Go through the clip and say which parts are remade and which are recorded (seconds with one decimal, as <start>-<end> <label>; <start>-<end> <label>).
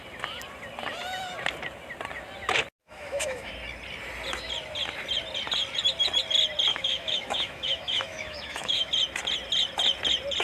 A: 0.0-2.8 recorded; 2.8-3.5 remade; 3.5-6.7 recorded; 6.7-8.9 remade; 8.9-10.4 recorded